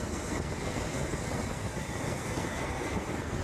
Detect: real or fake fake